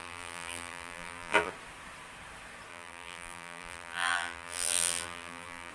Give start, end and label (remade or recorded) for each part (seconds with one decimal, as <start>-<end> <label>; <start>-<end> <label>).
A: 0.0-1.5 remade; 1.5-2.7 recorded; 2.7-5.7 remade